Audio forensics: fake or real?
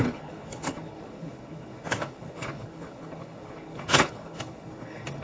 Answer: fake